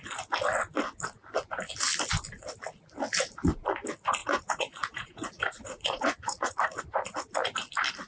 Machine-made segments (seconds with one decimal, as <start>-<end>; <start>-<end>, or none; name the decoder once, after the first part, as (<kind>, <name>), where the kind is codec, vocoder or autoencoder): 4.2-6.8 (vocoder, Vocos)